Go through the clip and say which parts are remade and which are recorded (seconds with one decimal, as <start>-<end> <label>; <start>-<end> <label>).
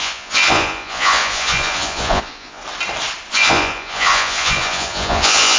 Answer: 0.0-2.6 remade; 2.6-3.3 recorded; 3.3-5.6 remade